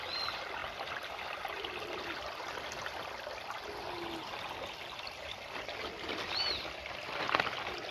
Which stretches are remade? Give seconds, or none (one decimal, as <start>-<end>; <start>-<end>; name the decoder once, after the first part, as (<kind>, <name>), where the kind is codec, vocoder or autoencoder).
none